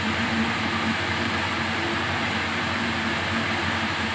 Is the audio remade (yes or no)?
yes